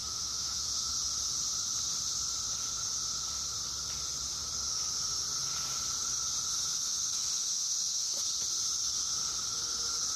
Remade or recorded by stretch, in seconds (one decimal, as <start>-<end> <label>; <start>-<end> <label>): 0.0-0.9 remade; 0.9-6.5 recorded; 6.5-8.2 remade; 8.2-10.2 recorded